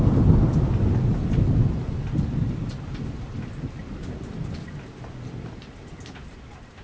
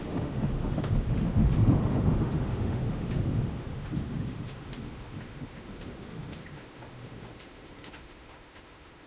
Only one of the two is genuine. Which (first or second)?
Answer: first